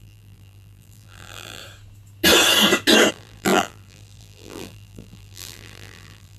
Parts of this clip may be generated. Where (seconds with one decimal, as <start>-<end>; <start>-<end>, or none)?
0.0-1.6; 3.1-6.4